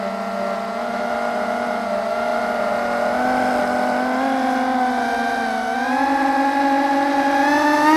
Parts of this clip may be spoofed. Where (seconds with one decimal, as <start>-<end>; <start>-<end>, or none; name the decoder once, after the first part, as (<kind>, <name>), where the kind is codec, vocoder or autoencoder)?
none